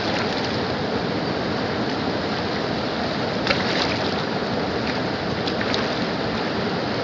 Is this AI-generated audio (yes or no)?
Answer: no